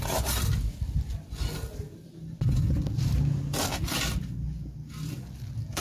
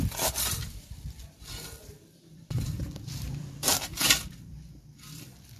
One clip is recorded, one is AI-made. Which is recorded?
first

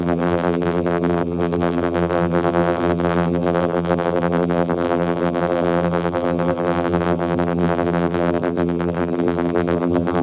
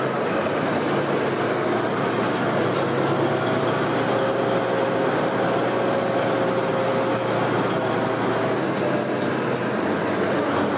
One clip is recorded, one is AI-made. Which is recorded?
second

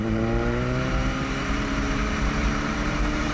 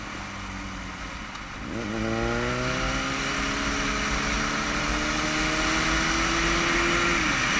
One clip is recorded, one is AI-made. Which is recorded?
second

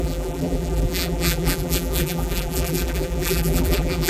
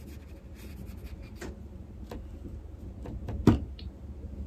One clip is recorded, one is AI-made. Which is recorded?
second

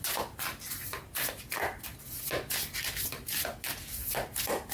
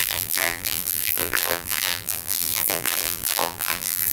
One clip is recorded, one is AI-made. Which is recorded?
first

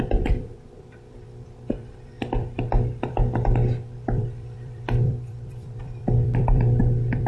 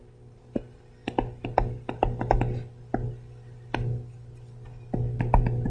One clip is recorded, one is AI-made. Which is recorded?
second